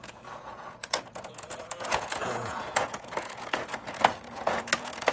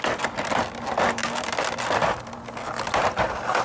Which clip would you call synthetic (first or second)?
first